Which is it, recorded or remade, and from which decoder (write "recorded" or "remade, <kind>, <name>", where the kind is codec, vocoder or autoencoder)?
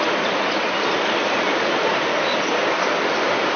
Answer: recorded